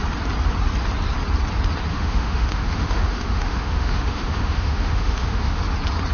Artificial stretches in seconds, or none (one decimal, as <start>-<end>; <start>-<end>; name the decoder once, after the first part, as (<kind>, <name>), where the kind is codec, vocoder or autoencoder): 1.9-5.6 (autoencoder, DAC-VAE)